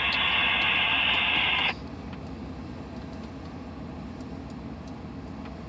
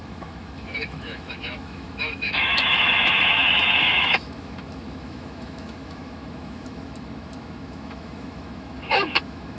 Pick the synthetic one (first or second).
second